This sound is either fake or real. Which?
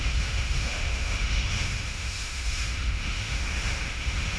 fake